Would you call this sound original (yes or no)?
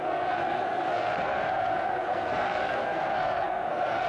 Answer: no